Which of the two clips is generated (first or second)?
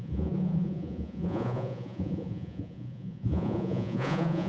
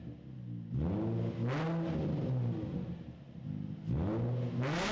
first